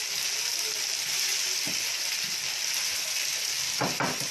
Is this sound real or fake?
real